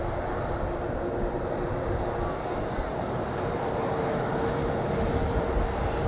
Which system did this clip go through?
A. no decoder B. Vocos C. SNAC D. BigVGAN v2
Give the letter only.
A